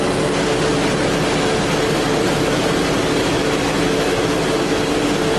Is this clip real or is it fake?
real